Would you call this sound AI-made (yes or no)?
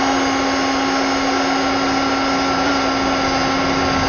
no